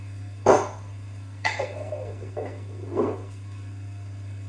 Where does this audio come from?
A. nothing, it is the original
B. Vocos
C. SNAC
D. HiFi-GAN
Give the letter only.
C